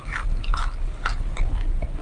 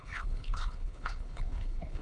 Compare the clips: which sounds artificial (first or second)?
second